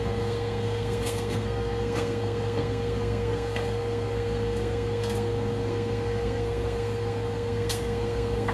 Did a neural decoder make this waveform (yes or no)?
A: yes